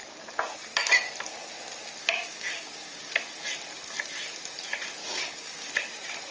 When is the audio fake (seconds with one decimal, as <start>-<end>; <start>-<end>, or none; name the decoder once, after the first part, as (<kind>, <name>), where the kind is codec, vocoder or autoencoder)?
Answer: 2.0-3.1 (codec, DAC); 5.0-5.7